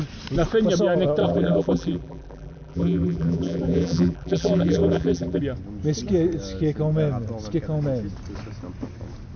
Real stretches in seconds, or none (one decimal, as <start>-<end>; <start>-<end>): 0.0-1.2; 5.4-9.4

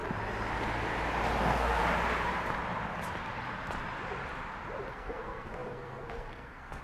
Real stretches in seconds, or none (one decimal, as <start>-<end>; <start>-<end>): 0.0-1.4; 1.8-4.9

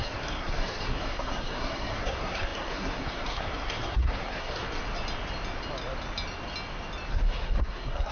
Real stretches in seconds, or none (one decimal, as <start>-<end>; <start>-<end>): 4.8-7.1

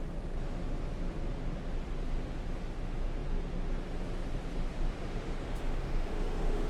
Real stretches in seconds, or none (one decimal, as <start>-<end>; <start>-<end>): 0.0-5.0

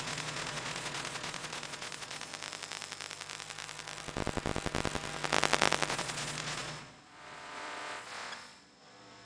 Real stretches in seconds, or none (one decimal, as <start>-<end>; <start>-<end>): 2.3-5.9

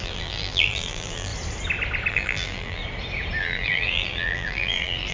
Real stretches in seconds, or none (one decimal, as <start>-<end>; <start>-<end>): 1.3-2.1; 2.8-3.4

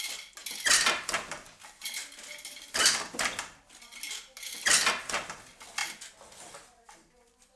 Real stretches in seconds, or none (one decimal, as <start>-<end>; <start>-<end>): 0.0-7.6